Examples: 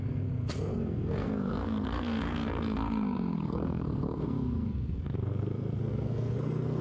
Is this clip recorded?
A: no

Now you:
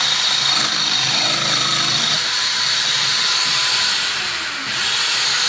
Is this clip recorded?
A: yes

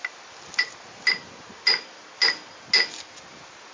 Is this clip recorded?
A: yes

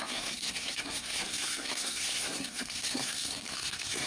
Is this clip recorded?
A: no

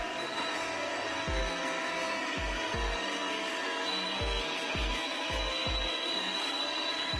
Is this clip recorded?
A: no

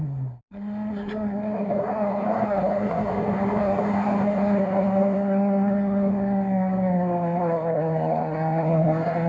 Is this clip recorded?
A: no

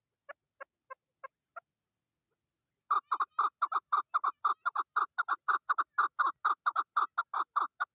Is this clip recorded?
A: yes